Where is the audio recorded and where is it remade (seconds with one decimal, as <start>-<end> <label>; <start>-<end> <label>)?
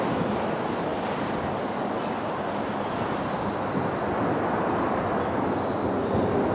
0.0-6.5 recorded